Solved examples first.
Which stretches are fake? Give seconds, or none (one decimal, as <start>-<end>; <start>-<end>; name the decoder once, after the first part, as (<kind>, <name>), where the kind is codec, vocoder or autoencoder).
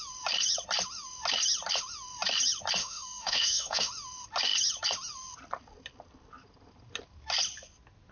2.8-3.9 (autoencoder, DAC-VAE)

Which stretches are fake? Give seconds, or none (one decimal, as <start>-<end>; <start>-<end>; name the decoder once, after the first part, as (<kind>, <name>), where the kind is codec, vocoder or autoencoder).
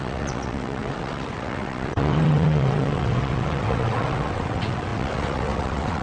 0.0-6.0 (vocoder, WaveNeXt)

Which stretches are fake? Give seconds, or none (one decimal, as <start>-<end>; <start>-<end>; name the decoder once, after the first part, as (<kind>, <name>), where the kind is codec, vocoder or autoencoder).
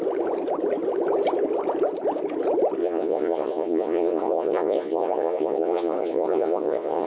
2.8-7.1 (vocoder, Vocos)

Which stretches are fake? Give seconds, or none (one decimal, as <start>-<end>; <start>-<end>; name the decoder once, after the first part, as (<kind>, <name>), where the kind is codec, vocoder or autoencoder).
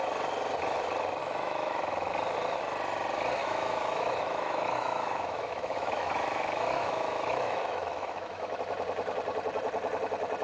1.2-2.1 (autoencoder, DAC-VAE); 3.4-8.6